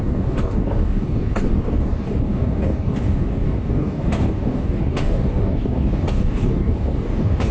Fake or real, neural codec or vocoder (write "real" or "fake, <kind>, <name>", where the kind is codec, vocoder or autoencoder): fake, codec, DAC